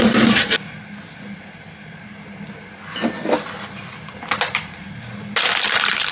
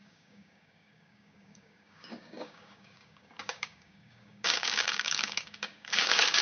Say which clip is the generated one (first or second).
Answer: second